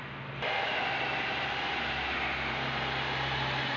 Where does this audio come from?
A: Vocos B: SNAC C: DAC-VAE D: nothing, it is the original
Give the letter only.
D